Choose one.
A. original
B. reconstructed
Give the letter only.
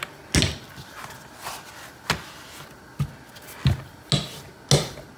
A